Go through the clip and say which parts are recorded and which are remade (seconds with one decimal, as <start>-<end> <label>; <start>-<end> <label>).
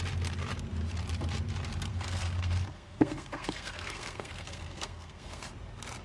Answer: 0.0-1.9 recorded; 1.9-5.5 remade; 5.5-6.0 recorded